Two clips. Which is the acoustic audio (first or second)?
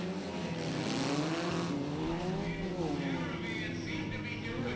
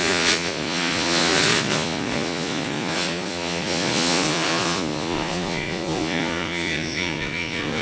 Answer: first